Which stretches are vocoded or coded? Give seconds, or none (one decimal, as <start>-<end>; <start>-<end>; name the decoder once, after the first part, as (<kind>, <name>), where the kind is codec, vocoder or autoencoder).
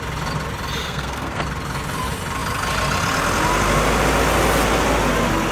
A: 0.8-1.4 (codec, SNAC)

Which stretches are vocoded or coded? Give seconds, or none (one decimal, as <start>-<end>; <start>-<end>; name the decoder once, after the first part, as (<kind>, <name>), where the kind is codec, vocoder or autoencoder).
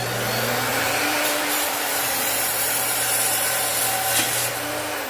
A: 0.7-3.8 (vocoder, BigVGAN v2)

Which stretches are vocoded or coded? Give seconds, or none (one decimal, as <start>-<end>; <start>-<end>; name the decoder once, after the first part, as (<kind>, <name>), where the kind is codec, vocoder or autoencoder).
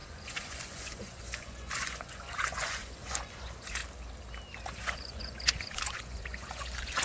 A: 0.0-3.8 (vocoder, Vocos); 4.7-7.0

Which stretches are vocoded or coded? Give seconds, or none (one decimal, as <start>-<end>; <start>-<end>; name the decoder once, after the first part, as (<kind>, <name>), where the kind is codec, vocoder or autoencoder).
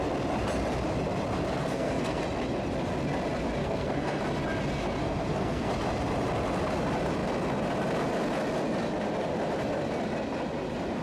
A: 1.6-2.2 (codec, SNAC); 3.6-4.2; 5.0-5.7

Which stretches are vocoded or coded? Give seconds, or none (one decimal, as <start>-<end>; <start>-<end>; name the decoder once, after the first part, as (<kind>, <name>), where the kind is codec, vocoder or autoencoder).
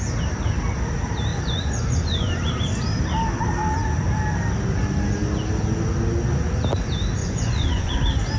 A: 1.3-2.5 (vocoder, Vocos); 7.2-7.9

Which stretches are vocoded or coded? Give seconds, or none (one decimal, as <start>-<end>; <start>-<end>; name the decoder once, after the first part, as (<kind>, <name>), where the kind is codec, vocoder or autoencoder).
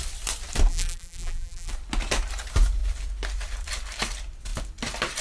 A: 0.7-1.7 (vocoder, BigVGAN v2)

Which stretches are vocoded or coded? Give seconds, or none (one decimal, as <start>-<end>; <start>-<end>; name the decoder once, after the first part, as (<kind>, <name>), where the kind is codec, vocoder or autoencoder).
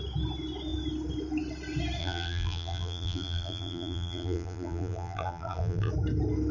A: 2.0-5.9 (vocoder, BigVGAN v2)